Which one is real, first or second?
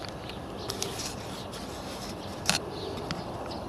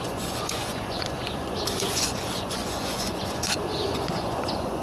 first